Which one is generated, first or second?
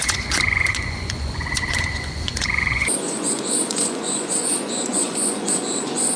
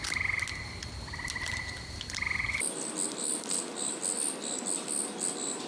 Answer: first